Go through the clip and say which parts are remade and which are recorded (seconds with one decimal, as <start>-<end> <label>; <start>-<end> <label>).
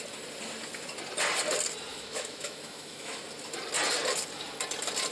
0.0-1.9 recorded; 1.9-3.2 remade; 3.2-5.1 recorded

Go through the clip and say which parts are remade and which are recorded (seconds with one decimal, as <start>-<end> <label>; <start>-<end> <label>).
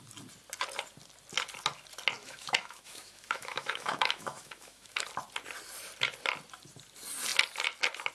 0.0-2.2 recorded; 2.2-5.0 remade; 5.0-8.1 recorded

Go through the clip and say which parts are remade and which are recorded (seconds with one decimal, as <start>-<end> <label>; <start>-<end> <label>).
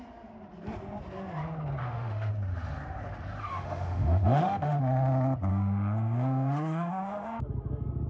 0.0-1.8 recorded; 1.8-2.3 remade; 2.3-3.4 recorded; 3.4-4.8 remade; 4.8-5.5 recorded; 5.5-7.4 remade; 7.4-8.1 recorded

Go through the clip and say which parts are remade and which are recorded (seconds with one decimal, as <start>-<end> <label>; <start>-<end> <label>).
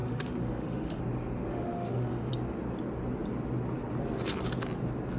0.0-1.0 remade; 1.0-1.5 recorded; 1.5-2.3 remade; 2.3-5.2 recorded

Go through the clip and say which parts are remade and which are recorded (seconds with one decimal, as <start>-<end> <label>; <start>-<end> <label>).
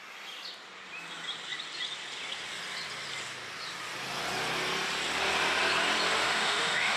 0.0-6.2 recorded; 6.2-7.0 remade